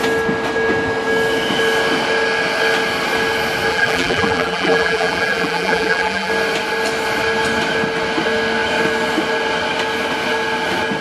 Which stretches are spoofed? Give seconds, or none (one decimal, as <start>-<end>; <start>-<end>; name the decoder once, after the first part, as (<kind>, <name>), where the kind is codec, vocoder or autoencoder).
3.7-6.3 (vocoder, BigVGAN v2)